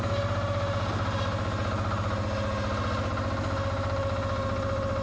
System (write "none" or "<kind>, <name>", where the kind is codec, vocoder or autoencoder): none